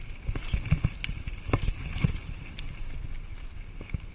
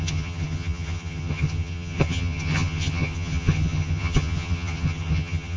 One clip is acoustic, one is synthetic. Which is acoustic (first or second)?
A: first